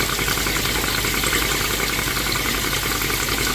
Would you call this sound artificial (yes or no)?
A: no